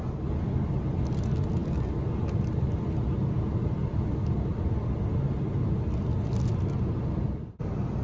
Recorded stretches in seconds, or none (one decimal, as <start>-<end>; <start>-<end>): 0.0-8.0